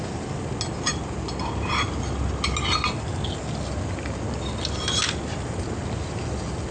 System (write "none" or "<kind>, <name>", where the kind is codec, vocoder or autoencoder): none